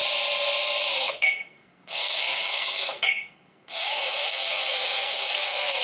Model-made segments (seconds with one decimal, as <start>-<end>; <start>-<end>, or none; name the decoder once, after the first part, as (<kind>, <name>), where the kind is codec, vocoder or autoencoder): 1.0-5.8 (codec, SNAC)